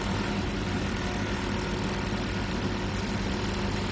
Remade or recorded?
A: recorded